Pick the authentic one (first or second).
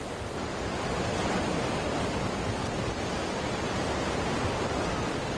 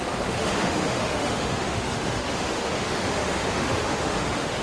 first